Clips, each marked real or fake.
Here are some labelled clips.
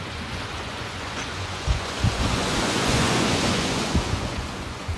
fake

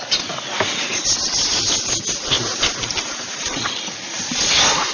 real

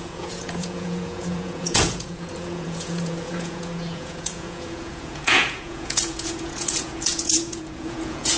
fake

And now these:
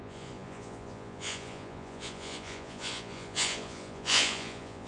fake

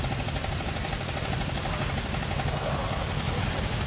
real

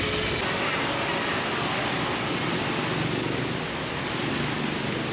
real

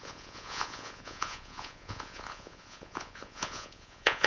fake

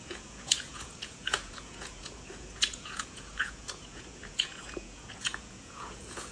fake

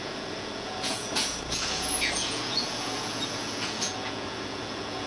fake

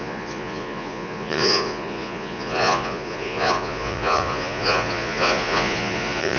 fake